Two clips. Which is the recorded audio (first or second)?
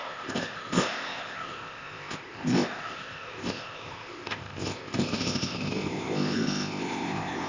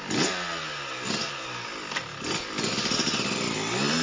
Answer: second